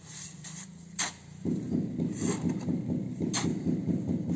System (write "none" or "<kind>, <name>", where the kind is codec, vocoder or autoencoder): none